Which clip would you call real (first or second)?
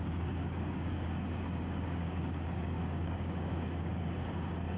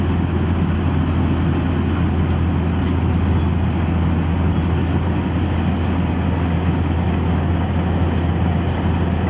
second